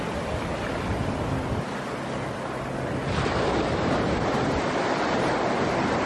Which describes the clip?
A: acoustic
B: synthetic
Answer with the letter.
A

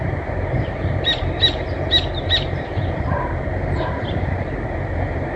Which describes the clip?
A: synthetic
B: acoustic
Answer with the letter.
A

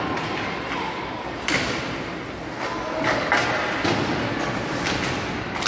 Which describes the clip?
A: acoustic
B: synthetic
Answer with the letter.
A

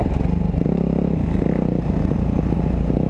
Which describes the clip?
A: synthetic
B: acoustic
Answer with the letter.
B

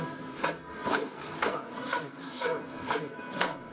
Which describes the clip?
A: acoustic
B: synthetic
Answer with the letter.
B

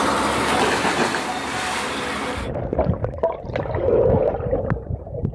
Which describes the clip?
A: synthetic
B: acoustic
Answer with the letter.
B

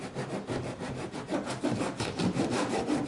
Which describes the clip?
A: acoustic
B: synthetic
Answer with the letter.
A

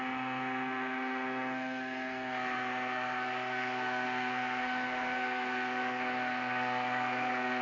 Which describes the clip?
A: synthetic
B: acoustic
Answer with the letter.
A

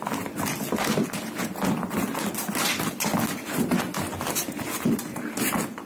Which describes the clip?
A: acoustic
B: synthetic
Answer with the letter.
A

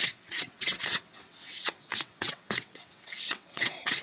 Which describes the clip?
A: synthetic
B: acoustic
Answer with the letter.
A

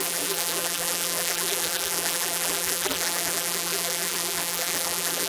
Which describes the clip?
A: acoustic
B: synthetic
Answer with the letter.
B